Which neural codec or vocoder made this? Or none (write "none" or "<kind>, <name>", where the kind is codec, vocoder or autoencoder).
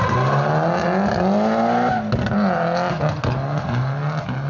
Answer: none